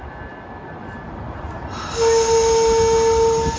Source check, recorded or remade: recorded